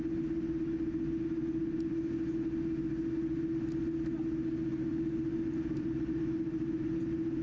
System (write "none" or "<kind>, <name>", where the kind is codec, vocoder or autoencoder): none